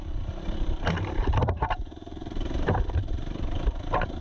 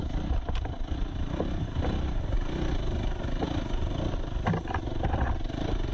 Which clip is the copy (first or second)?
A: first